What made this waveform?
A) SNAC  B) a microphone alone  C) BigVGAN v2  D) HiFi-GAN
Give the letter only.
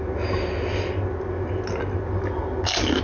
B